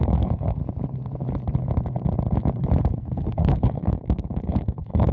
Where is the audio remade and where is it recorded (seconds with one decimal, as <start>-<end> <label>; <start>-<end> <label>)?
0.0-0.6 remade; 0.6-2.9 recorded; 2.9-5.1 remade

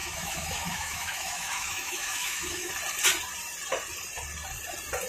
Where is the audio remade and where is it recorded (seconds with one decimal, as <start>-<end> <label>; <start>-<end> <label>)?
0.0-2.7 remade; 2.7-5.1 recorded

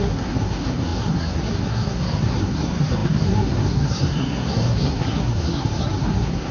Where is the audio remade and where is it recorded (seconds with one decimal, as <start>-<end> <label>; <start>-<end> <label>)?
0.0-6.5 remade

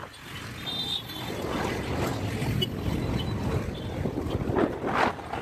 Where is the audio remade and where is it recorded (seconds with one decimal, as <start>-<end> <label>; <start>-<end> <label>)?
0.0-5.4 recorded